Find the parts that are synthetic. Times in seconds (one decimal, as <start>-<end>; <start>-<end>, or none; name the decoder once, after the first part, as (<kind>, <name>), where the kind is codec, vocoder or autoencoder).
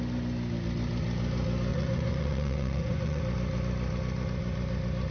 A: 1.7-3.2 (vocoder, Vocos)